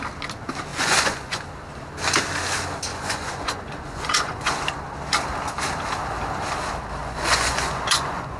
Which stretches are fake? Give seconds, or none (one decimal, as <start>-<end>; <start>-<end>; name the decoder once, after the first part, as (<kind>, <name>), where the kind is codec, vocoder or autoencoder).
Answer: 0.7-1.4 (vocoder, Vocos); 2.9-4.5; 7.0-8.4